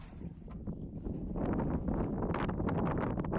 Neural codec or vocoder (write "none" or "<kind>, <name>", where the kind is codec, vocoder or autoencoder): none